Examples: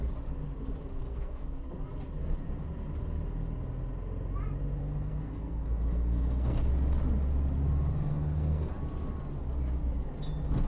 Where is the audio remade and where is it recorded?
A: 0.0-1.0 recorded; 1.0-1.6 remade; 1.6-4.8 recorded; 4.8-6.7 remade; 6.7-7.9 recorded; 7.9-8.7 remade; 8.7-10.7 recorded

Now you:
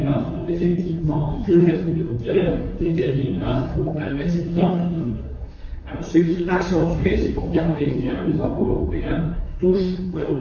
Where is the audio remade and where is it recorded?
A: 0.0-10.4 remade

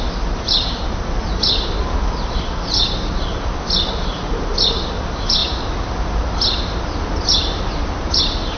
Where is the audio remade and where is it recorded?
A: 0.0-8.6 recorded

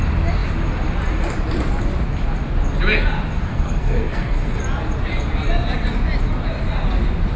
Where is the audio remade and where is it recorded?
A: 0.0-3.5 recorded; 3.5-4.6 remade; 4.6-7.4 recorded